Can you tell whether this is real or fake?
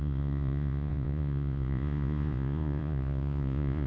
fake